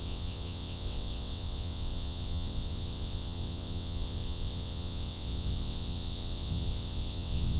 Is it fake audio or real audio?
fake